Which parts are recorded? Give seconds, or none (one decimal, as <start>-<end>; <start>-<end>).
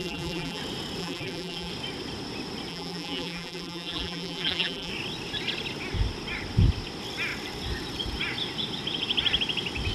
0.6-1.0; 1.7-2.7; 4.9-9.9